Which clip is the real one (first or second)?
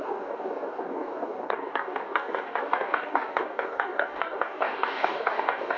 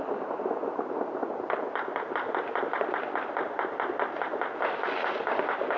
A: second